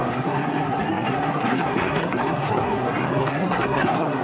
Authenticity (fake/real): fake